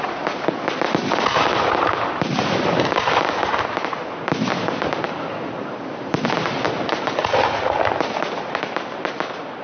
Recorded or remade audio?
recorded